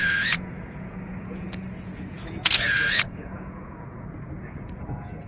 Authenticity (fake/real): fake